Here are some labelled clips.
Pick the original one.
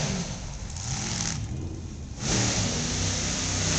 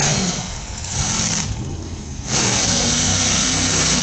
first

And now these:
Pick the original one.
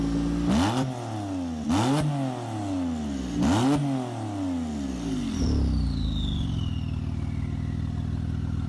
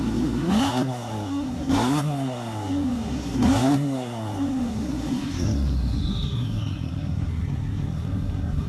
first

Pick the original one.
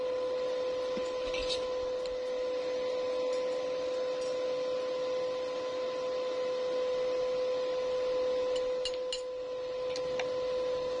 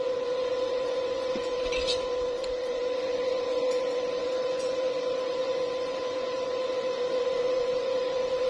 first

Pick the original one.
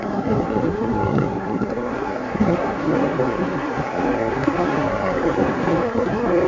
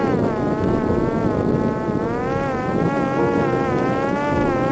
second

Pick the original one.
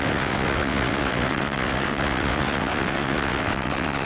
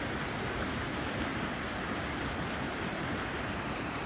second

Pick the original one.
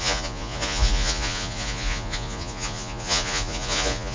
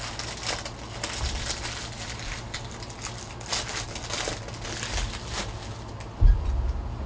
second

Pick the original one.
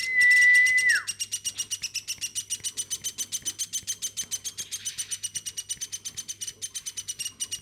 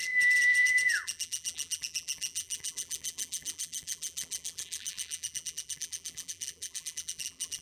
first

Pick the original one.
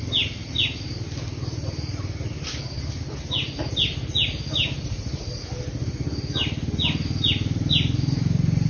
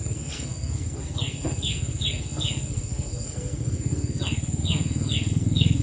first